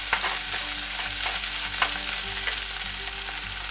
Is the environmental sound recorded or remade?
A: recorded